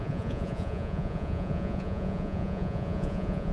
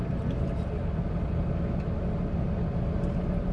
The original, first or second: second